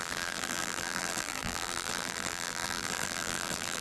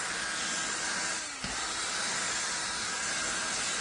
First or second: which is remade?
first